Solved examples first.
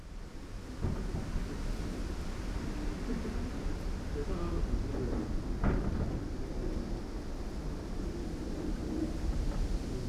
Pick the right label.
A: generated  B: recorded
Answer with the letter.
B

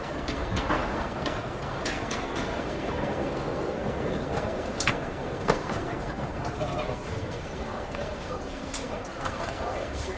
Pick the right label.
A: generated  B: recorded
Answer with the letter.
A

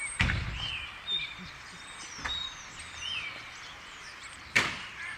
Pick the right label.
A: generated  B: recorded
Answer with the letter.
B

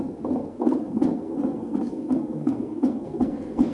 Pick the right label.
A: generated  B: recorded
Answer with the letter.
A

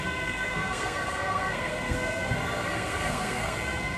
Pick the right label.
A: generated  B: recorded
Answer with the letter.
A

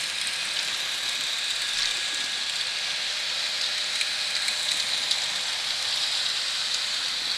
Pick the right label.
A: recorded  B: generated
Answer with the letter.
A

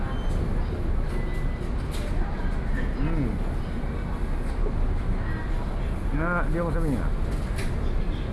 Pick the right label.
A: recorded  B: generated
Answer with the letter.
A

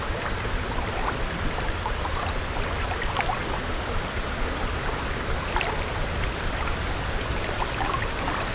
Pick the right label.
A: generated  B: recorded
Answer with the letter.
B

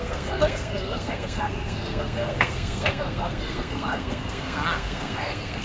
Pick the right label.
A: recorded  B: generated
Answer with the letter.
B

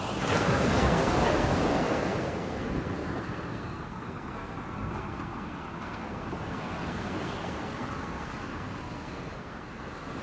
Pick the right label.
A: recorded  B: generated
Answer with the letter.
B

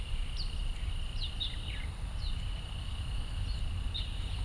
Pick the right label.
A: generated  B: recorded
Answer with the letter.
B